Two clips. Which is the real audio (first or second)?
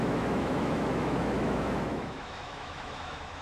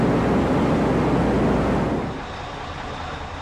second